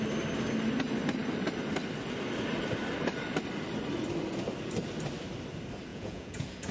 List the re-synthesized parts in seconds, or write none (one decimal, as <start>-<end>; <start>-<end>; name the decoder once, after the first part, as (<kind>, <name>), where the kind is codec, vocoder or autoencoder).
5.9-6.7 (vocoder, Vocos)